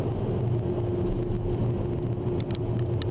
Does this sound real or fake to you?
real